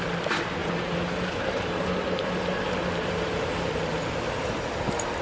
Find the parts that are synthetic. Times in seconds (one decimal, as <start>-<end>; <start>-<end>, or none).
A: 0.6-3.7